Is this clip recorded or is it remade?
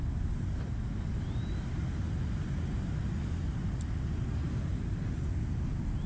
recorded